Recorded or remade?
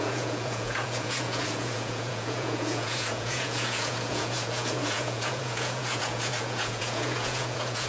remade